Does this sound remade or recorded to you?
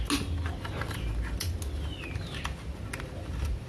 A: recorded